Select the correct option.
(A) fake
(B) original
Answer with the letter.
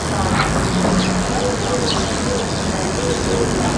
B